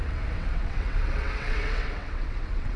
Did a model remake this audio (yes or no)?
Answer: yes